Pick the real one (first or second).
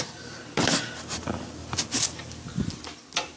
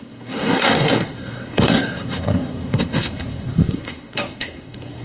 first